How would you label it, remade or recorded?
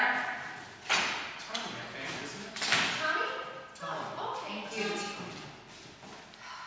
recorded